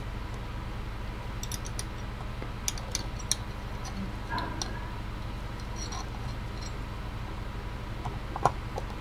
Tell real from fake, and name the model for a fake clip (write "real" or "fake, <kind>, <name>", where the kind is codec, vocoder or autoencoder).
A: real